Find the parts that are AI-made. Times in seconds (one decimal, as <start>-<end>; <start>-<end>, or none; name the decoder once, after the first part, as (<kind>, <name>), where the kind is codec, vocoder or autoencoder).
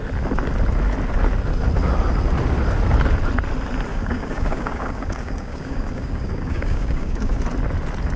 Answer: 3.9-7.4 (codec, DAC)